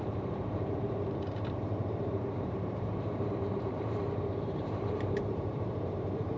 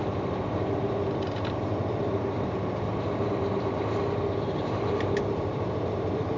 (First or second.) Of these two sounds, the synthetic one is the first